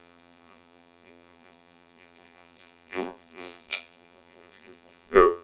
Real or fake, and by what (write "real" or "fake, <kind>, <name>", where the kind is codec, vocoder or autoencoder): fake, vocoder, BigVGAN v2